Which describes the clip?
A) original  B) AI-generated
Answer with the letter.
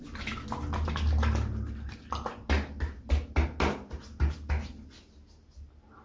A